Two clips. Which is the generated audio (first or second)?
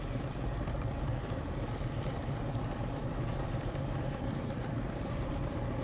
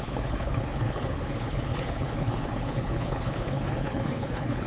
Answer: second